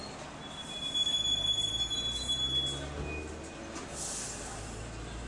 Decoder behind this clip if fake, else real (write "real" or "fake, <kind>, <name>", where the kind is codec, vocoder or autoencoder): real